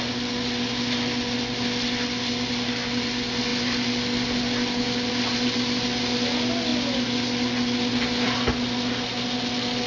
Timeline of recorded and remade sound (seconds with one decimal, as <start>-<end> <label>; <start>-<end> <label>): 0.0-9.9 recorded